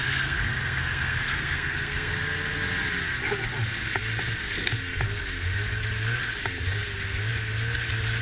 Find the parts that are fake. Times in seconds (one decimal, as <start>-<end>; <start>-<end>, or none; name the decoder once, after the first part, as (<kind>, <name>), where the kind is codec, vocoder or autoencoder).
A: 0.0-2.1 (codec, SNAC)